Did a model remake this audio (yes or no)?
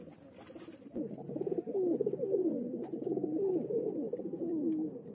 no